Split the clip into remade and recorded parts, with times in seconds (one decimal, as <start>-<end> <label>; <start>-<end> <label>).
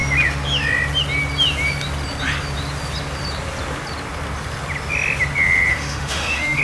0.0-5.7 recorded; 5.7-6.6 remade